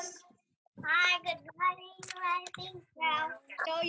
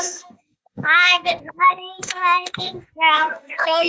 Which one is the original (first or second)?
first